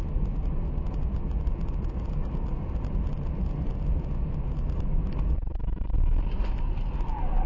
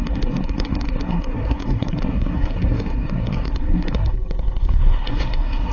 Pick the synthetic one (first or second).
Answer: second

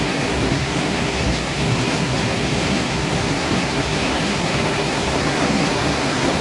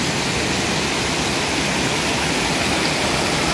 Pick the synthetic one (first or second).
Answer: first